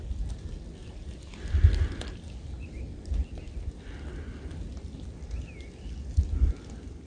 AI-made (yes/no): no